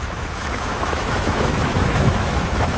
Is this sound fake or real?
fake